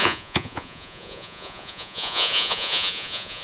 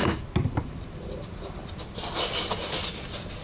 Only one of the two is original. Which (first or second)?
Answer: second